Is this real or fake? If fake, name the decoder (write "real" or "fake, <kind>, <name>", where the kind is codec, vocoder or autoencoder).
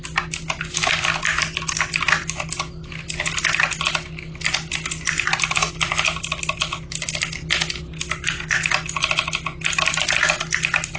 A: real